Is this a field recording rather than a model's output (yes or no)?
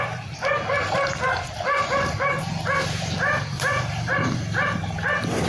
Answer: no